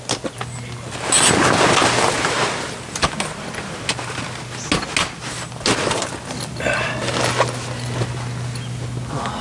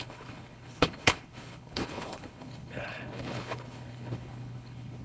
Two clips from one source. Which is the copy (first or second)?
second